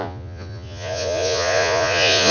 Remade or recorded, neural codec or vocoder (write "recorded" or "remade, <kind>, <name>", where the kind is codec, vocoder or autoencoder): remade, vocoder, Vocos